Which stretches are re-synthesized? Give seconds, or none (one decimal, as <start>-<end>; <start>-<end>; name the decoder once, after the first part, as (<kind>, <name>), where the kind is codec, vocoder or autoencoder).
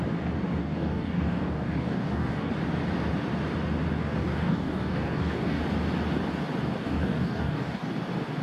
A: 0.6-2.5 (codec, DAC); 4.0-5.6; 6.8-7.9